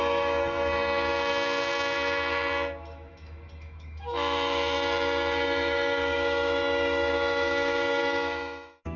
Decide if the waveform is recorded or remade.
remade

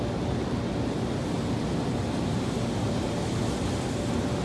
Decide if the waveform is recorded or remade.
recorded